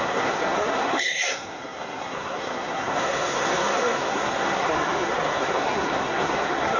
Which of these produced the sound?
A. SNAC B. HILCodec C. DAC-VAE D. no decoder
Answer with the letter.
A